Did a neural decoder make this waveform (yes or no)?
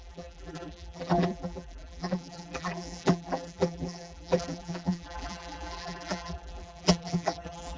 yes